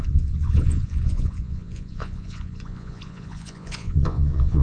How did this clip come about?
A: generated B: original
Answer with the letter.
A